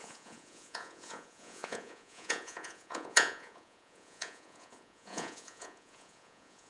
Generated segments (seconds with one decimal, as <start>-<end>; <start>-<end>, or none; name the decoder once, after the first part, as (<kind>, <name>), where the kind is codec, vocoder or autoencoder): 0.0-6.7 (vocoder, Vocos)